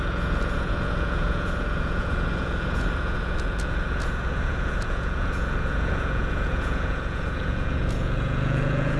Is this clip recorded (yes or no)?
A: no